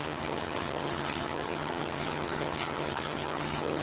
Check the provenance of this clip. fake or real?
fake